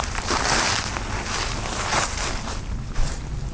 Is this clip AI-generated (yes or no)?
no